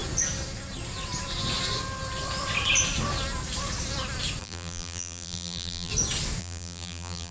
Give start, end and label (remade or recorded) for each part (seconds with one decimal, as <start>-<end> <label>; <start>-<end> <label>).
0.0-4.4 recorded; 4.4-5.9 remade; 5.9-6.4 recorded; 6.4-7.3 remade